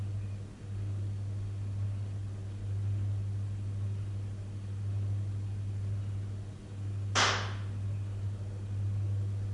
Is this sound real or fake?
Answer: real